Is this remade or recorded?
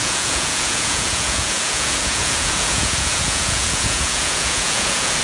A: remade